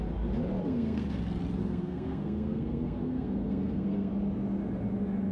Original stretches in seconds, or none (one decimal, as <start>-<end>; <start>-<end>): 0.0-0.6; 1.2-1.6; 4.1-5.3